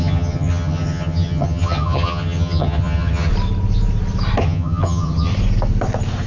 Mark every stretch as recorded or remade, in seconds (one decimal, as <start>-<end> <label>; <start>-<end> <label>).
0.0-3.3 remade; 3.3-4.4 recorded; 4.4-5.3 remade; 5.3-6.3 recorded